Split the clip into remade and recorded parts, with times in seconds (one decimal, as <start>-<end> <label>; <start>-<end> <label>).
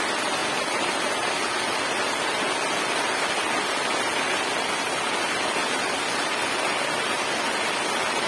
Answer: 0.0-8.3 recorded